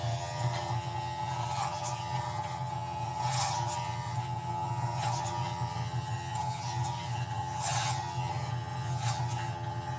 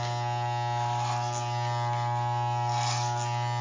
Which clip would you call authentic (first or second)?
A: second